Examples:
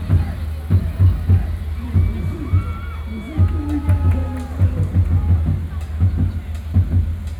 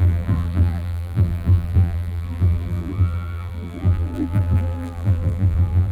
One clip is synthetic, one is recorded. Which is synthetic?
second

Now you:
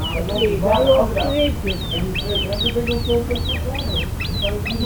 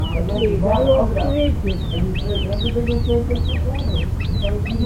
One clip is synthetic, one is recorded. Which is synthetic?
second